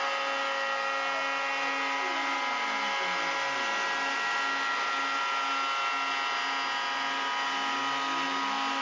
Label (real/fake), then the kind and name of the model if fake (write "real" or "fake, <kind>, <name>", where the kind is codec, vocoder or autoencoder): real